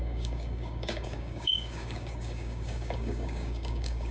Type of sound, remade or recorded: remade